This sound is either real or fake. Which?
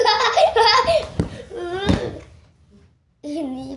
real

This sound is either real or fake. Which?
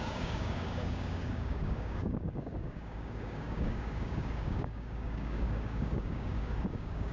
fake